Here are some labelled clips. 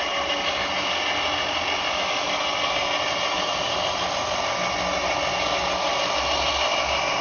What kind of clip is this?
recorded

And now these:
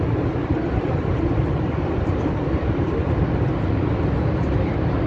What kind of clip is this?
recorded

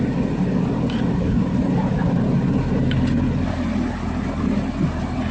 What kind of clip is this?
recorded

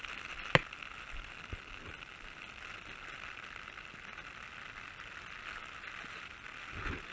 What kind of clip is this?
recorded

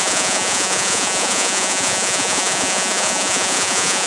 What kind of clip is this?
remade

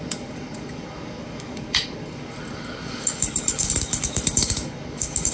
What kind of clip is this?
remade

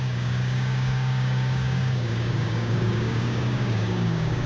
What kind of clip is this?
remade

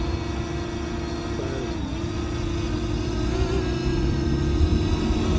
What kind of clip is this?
recorded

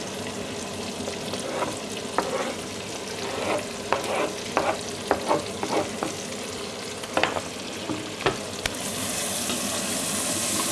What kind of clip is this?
recorded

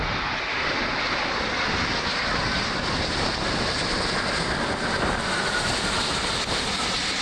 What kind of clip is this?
recorded